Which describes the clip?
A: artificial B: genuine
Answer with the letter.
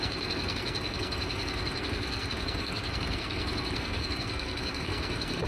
A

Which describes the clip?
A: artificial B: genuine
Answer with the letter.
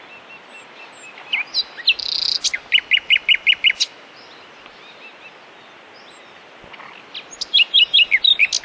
B